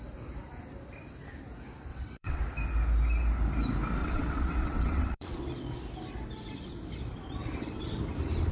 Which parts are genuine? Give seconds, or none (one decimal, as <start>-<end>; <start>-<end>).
0.0-1.9; 2.4-4.0; 5.4-8.5